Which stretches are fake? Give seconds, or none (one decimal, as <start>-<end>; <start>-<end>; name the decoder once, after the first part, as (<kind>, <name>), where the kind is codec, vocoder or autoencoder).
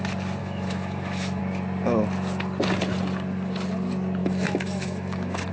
0.4-1.4 (autoencoder, DAC-VAE); 4.2-5.5